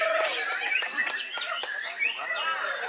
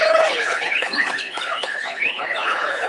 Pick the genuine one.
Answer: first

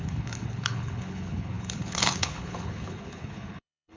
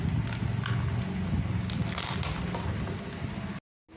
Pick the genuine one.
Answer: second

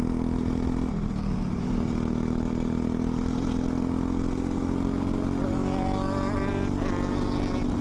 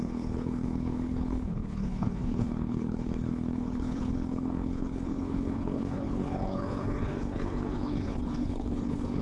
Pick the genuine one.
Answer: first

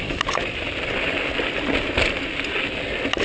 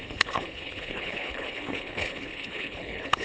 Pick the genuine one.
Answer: first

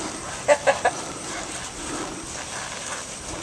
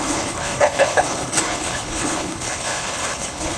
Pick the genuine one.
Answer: first